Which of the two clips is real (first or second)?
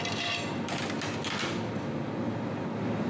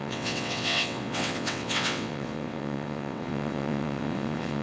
first